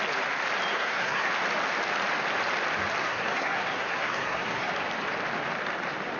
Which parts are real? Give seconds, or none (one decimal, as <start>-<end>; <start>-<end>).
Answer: 0.0-0.7; 1.3-3.0; 4.7-6.2